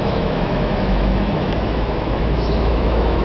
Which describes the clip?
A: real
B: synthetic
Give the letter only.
B